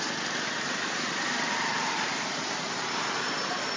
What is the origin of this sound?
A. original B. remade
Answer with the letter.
A